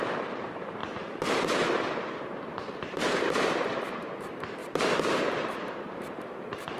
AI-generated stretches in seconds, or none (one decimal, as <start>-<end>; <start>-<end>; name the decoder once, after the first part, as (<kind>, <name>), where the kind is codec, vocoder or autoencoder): 0.0-4.6 (vocoder, BigVGAN v2); 5.1-6.8